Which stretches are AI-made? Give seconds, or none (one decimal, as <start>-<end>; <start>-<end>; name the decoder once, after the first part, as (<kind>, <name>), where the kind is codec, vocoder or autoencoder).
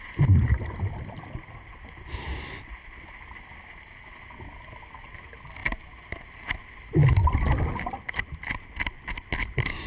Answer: none